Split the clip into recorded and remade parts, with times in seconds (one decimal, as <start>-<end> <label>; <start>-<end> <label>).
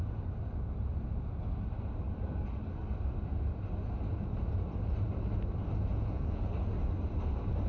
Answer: 0.0-5.9 recorded; 5.9-6.5 remade; 6.5-7.7 recorded